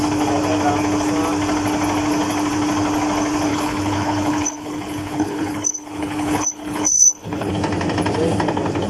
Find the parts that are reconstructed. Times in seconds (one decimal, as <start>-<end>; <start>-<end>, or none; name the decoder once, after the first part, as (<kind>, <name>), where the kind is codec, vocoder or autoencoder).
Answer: 3.5-7.5 (codec, HILCodec)